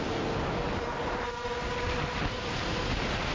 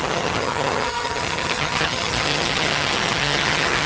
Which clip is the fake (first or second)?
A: second